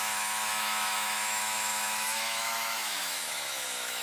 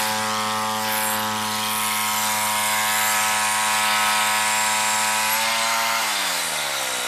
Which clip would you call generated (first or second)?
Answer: first